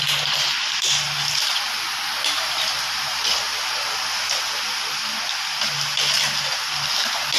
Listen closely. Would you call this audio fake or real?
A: real